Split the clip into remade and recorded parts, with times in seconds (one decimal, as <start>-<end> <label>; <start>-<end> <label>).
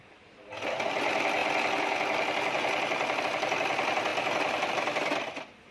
0.0-5.7 recorded